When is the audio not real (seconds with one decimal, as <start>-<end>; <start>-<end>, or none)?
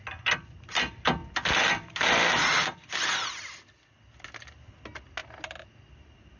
none